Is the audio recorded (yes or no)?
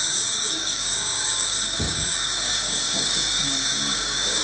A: no